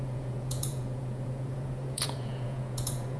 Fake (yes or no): yes